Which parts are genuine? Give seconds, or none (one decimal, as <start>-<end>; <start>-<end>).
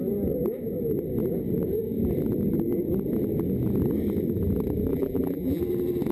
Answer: 0.0-4.9; 5.6-6.1